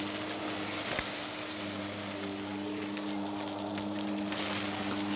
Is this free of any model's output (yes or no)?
yes